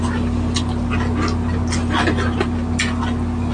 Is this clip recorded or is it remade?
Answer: recorded